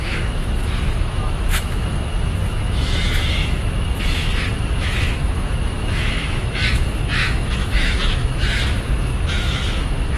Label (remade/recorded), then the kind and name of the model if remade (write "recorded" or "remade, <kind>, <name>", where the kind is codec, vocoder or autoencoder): remade, autoencoder, DAC-VAE